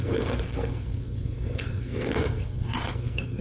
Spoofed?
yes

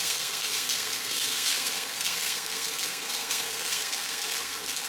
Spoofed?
yes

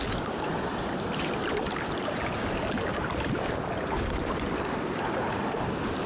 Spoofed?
no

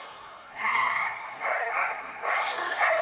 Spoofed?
yes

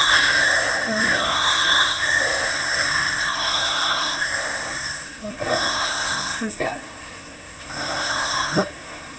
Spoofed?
yes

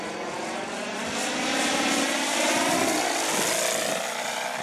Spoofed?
no